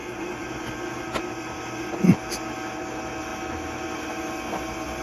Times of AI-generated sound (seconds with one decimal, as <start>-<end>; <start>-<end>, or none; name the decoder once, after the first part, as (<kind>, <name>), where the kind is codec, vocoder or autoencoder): 0.0-1.0 (vocoder, BigVGAN v2)